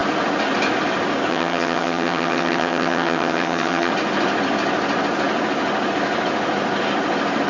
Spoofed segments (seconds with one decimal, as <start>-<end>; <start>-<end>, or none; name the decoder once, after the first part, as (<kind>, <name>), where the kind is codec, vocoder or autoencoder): 1.3-3.9 (vocoder, HiFi-GAN)